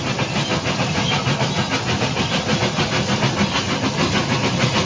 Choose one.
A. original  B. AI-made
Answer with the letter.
A